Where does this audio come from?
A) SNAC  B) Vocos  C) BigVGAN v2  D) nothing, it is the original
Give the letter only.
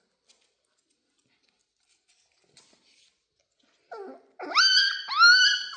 D